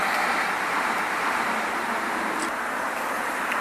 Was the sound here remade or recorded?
remade